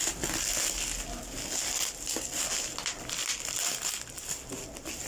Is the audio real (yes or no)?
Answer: yes